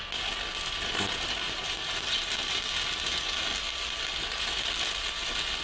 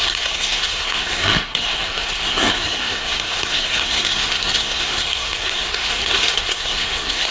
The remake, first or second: second